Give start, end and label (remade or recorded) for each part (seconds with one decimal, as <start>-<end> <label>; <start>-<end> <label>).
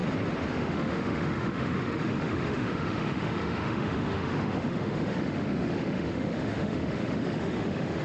0.0-0.5 recorded; 0.5-8.0 remade